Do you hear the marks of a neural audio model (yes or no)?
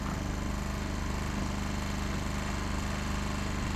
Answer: no